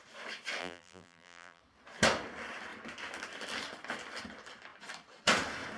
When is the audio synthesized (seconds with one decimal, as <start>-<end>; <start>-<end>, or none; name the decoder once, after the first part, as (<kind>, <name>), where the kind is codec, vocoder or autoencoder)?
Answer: 0.6-1.6 (vocoder, BigVGAN v2)